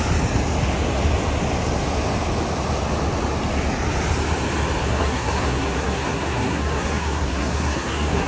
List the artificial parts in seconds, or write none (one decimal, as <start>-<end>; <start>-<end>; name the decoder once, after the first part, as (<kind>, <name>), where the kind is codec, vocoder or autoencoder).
4.8-8.3 (codec, SNAC)

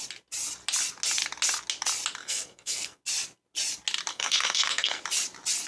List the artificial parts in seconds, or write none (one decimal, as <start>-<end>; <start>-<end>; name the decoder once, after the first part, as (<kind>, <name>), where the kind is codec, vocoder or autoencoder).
2.2-3.0 (codec, SNAC); 4.1-5.0

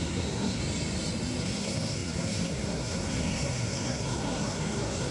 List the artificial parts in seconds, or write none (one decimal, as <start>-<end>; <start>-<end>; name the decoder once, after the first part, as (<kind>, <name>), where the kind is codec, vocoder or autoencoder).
0.0-0.6 (codec, SNAC); 1.4-5.1

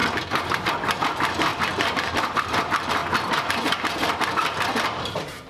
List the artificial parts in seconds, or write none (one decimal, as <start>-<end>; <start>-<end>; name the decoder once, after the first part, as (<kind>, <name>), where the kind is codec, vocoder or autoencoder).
1.0-3.0 (vocoder, BigVGAN v2); 3.5-5.5

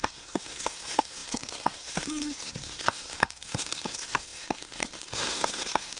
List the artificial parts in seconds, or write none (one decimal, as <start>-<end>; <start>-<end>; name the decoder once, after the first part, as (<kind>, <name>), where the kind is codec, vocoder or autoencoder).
0.0-6.0 (codec, SNAC)

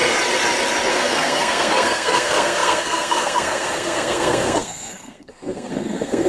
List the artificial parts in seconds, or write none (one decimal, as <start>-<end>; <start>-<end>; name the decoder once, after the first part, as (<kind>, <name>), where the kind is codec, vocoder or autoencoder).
0.9-6.3 (codec, SNAC)

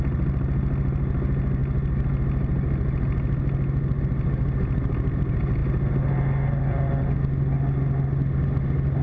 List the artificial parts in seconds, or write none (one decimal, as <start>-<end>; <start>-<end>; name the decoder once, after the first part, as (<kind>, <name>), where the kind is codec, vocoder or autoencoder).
none